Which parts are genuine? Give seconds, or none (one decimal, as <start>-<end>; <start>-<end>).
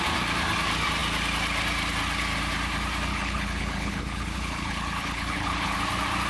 0.0-3.1; 5.8-6.3